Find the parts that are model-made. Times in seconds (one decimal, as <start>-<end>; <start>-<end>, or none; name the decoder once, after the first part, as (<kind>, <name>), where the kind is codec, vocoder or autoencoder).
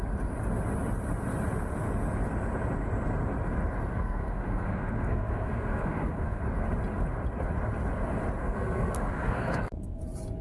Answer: 3.9-6.4 (codec, SNAC); 8.4-10.0